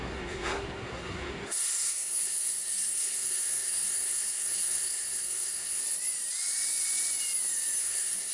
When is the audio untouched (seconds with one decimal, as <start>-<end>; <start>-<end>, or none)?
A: 5.8-7.8